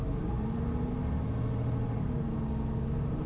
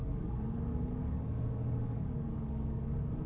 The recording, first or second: first